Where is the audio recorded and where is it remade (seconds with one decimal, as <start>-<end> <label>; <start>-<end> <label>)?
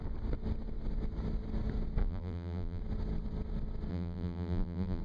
0.0-2.0 recorded; 2.0-2.8 remade; 2.8-3.9 recorded; 3.9-5.0 remade